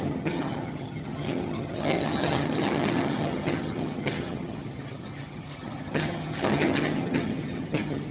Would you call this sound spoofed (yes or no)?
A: yes